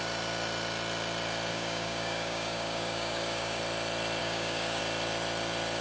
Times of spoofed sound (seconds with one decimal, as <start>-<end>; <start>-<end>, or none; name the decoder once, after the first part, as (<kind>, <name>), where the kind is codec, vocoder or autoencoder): 1.5-3.6 (codec, DAC); 4.2-4.8